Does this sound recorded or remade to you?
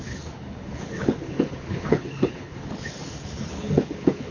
remade